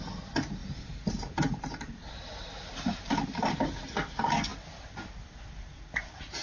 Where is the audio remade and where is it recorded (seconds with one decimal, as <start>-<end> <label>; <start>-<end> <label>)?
0.0-0.6 recorded; 0.6-3.6 remade; 3.6-4.5 recorded; 4.5-5.1 remade; 5.1-6.4 recorded